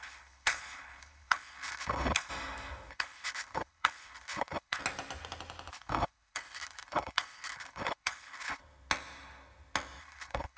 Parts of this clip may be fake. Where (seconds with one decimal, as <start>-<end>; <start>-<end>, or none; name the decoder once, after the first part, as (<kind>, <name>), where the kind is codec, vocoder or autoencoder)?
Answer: 0.0-2.3 (codec, HILCodec); 2.9-4.8; 5.7-8.6; 10.0-10.6